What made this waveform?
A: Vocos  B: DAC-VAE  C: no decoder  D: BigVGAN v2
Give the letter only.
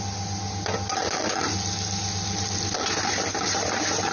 C